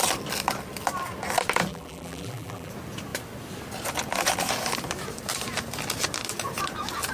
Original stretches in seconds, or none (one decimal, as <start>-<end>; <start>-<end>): 0.0-1.7; 2.7-7.1